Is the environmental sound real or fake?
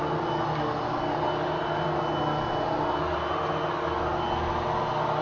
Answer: real